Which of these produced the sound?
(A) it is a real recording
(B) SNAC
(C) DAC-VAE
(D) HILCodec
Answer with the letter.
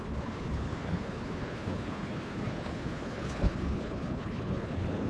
D